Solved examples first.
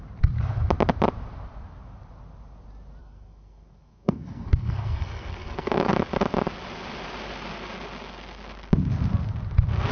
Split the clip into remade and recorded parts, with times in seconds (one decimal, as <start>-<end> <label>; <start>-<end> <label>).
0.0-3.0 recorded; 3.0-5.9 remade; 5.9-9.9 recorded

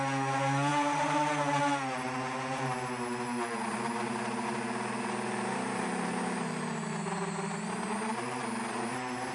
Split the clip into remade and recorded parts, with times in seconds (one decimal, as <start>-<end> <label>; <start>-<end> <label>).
0.0-9.3 recorded

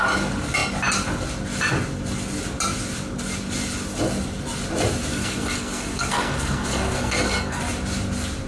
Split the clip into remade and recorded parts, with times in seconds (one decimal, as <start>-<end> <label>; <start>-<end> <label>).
0.0-5.1 recorded; 5.1-7.6 remade; 7.6-8.5 recorded

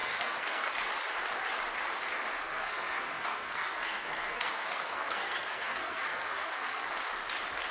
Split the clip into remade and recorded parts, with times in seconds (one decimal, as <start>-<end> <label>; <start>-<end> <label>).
0.0-0.9 remade; 0.9-2.4 recorded; 2.4-6.9 remade; 6.9-7.7 recorded

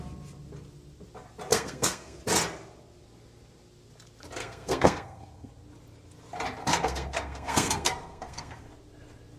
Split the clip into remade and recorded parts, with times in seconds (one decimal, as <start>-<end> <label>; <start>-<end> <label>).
0.0-1.5 recorded; 1.5-2.2 remade; 2.2-4.4 recorded; 4.4-5.5 remade; 5.5-6.6 recorded; 6.6-8.7 remade; 8.7-9.4 recorded